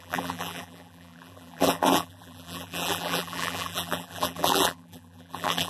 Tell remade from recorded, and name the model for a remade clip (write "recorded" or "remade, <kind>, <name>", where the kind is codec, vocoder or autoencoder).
remade, vocoder, BigVGAN v2